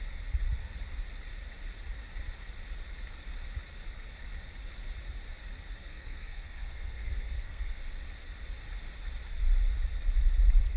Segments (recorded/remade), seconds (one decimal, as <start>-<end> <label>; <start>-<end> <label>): 0.0-5.8 recorded; 5.8-7.8 remade; 7.8-10.8 recorded